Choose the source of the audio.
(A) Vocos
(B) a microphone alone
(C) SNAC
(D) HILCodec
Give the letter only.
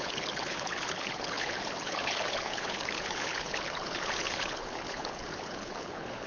D